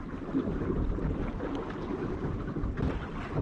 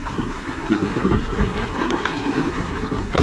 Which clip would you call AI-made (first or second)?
second